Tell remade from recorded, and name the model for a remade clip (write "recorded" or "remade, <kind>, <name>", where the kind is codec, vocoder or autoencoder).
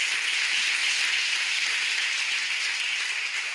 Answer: recorded